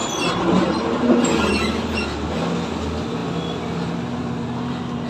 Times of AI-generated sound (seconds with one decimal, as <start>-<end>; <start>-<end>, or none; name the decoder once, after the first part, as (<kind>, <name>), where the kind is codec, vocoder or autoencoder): none